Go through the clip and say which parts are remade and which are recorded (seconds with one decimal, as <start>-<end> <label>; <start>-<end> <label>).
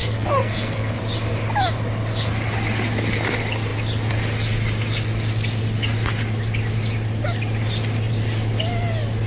0.0-1.0 remade; 1.0-9.3 recorded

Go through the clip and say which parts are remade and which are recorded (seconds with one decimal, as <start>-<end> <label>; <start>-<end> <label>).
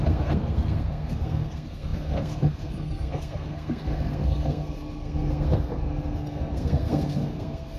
0.0-7.8 remade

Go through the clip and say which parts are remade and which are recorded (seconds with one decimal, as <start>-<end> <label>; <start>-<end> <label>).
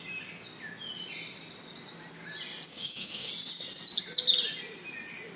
0.0-2.7 recorded; 2.7-3.3 remade; 3.3-5.4 recorded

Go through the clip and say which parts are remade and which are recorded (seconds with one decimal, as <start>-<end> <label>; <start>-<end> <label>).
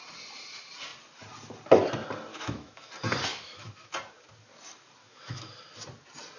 0.0-2.3 recorded; 2.3-2.9 remade; 2.9-3.3 recorded; 3.3-3.9 remade; 3.9-5.0 recorded; 5.0-5.5 remade; 5.5-6.4 recorded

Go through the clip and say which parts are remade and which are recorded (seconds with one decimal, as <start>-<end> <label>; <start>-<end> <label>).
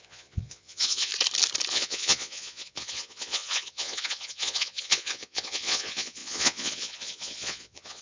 0.0-1.1 remade; 1.1-1.7 recorded; 1.7-8.0 remade